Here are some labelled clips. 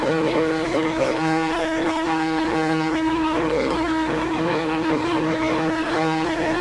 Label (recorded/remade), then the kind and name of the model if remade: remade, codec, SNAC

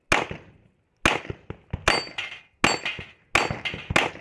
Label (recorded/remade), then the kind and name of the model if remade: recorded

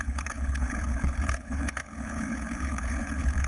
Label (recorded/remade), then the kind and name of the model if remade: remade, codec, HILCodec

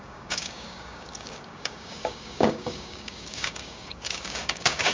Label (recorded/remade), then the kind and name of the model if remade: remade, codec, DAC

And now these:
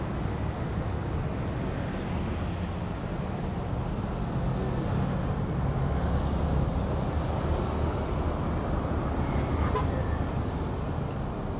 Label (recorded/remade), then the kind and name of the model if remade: recorded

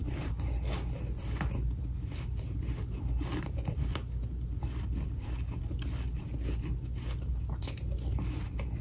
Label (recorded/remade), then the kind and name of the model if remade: recorded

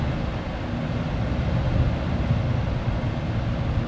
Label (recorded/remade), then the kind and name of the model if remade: recorded